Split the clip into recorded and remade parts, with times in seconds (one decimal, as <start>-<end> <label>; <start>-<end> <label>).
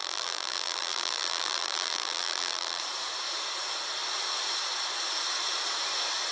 0.0-2.8 remade; 2.8-6.3 recorded